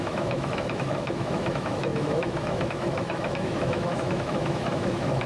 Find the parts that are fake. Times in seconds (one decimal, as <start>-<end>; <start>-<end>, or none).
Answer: 0.0-5.3